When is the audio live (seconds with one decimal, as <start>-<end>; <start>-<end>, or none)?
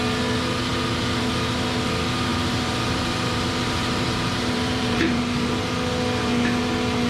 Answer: 0.0-2.3; 5.2-7.1